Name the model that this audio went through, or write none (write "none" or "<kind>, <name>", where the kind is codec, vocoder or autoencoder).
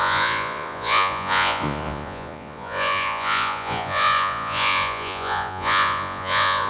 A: vocoder, Vocos